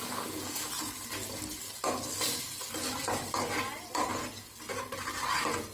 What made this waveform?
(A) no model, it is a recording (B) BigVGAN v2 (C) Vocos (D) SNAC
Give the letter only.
A